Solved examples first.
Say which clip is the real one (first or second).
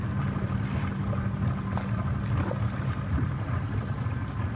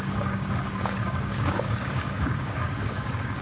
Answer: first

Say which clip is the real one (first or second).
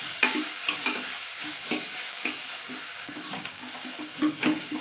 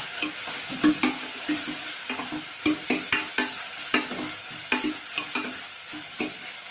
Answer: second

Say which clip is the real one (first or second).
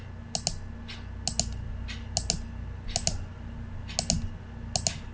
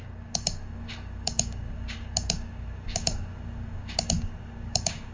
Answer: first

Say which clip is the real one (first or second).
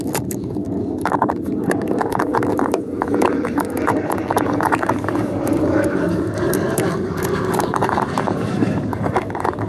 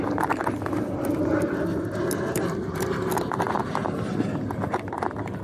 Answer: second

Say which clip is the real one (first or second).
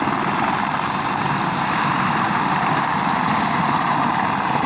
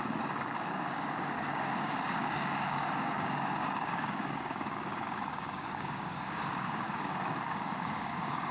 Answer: first